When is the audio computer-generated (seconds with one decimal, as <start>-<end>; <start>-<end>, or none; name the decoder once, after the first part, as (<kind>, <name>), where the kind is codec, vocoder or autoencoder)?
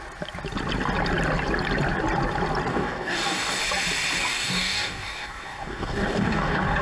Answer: 2.7-3.6 (codec, DAC); 4.2-6.8